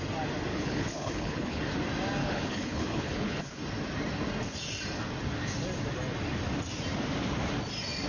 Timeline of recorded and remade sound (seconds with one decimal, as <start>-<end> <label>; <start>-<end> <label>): 0.0-0.5 recorded; 0.5-1.6 remade; 1.6-2.2 recorded; 2.2-3.6 remade; 3.6-8.1 recorded